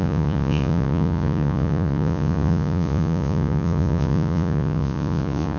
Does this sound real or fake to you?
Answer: fake